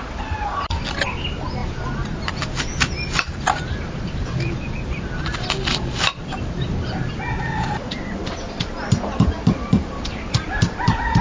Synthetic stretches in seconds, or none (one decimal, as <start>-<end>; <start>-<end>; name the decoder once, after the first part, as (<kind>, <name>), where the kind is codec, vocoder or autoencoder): none